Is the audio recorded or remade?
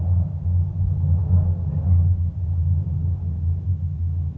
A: recorded